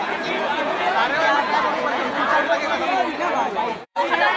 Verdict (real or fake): fake